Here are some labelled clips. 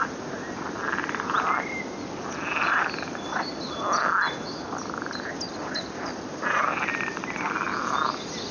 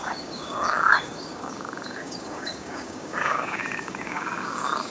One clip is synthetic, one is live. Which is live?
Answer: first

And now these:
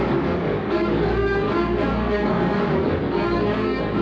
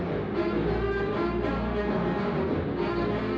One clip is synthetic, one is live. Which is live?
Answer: second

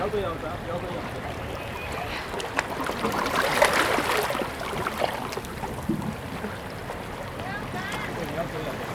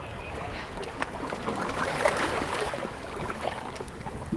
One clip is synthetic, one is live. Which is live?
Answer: first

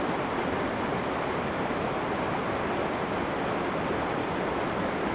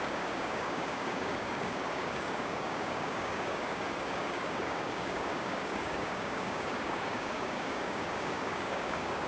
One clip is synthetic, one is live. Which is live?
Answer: first